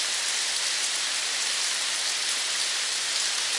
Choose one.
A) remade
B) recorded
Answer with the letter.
B